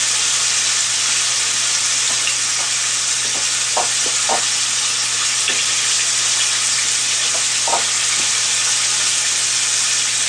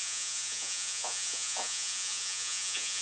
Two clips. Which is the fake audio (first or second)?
second